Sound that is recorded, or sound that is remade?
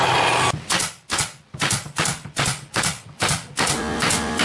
recorded